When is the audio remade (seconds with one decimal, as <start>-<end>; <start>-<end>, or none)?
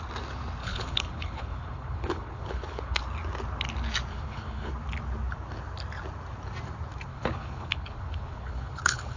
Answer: 0.6-3.0; 4.1-4.7; 7.1-9.2